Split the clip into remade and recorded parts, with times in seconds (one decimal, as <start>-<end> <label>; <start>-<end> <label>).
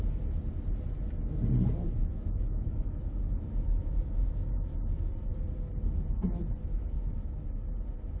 0.0-2.0 recorded; 2.0-4.7 remade; 4.7-6.7 recorded; 6.7-7.3 remade; 7.3-8.2 recorded